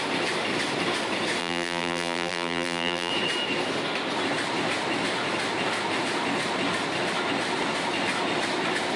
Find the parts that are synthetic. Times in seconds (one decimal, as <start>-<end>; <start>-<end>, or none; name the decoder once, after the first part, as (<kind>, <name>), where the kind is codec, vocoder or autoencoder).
1.4-3.1 (vocoder, BigVGAN v2)